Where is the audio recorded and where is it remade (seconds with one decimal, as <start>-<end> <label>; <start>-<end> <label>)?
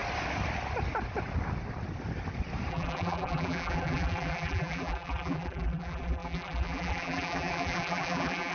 0.0-2.7 recorded; 2.7-8.5 remade